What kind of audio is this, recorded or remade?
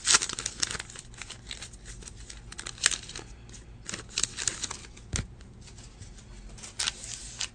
recorded